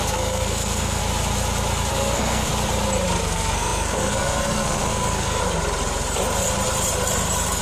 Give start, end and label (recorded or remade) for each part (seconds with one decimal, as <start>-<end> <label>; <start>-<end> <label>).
0.0-1.0 remade; 1.0-1.9 recorded; 1.9-2.5 remade; 2.5-3.2 recorded; 3.2-5.4 remade; 5.4-7.6 recorded